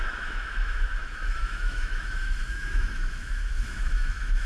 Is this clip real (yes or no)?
no